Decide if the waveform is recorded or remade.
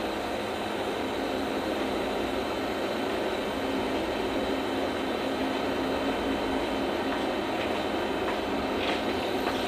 recorded